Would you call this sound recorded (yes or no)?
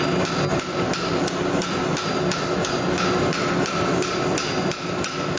yes